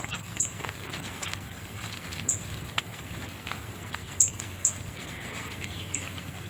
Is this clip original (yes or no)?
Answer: no